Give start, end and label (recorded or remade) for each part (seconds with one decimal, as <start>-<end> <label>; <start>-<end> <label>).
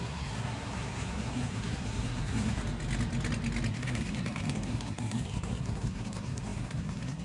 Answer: 0.0-2.6 remade; 2.6-3.7 recorded; 3.7-7.2 remade